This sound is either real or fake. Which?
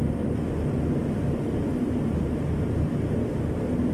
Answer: real